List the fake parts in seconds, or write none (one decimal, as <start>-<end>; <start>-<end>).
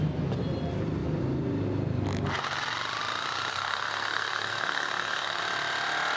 3.5-5.4